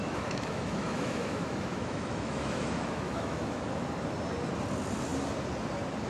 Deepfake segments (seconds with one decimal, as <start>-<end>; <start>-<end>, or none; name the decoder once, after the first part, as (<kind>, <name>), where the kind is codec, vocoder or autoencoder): 0.0-3.6 (autoencoder, DAC-VAE)